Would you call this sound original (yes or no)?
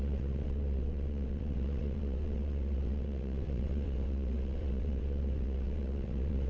no